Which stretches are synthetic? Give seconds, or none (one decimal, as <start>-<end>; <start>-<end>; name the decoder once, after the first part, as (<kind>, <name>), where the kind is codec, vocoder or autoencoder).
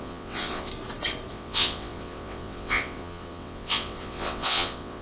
0.0-0.7 (vocoder, WaveNeXt); 1.3-5.0